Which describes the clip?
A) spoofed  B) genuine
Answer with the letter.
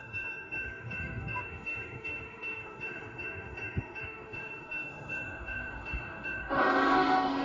A